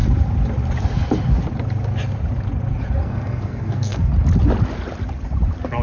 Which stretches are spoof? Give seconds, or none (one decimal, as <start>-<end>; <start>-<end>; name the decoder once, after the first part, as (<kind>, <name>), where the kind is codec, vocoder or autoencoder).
3.0-4.1 (codec, SNAC)